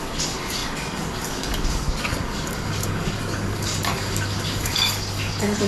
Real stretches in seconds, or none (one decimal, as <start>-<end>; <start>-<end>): none

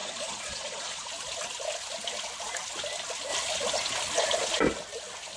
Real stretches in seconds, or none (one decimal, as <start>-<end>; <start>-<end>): 1.1-5.4

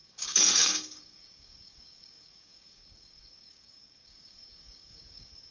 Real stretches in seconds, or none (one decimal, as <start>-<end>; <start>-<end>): none

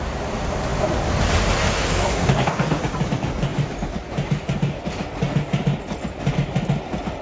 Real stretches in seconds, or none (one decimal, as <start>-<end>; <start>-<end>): 0.0-1.6; 2.8-7.2

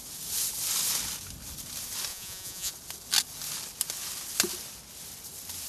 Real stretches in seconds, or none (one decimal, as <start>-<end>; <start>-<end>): 0.0-2.1; 2.7-5.7

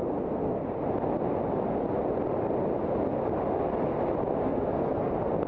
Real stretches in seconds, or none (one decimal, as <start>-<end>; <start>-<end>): 0.0-4.4; 5.1-5.5